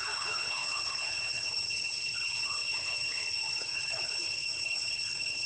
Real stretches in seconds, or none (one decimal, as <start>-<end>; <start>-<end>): none